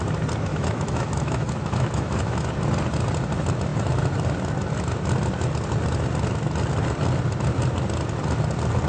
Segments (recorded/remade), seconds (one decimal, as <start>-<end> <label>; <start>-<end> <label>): 0.0-0.5 recorded; 0.5-2.5 remade; 2.5-8.9 recorded